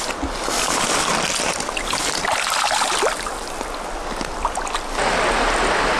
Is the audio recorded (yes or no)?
yes